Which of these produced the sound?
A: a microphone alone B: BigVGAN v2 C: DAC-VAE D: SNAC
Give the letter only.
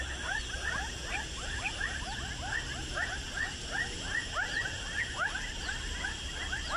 A